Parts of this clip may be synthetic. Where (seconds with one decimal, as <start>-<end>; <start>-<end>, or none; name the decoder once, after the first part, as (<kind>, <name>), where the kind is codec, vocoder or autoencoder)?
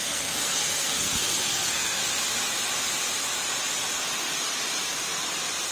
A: 0.0-2.0 (codec, SNAC)